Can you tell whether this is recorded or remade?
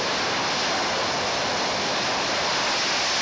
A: recorded